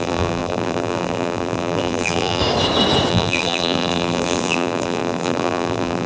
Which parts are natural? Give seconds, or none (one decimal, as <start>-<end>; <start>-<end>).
2.4-3.1